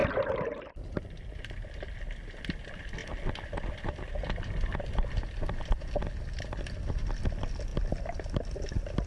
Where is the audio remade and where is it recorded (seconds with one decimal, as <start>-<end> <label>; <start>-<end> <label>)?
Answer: 0.0-9.1 recorded